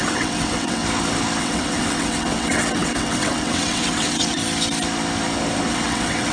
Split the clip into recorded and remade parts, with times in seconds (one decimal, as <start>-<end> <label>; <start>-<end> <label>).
0.0-0.8 remade; 0.8-1.4 recorded; 1.4-4.4 remade; 4.4-5.7 recorded; 5.7-6.3 remade